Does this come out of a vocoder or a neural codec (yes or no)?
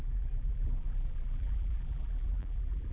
yes